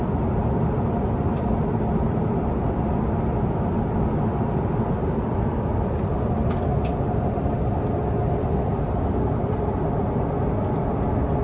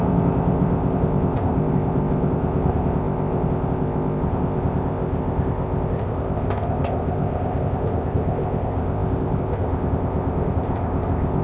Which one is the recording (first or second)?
first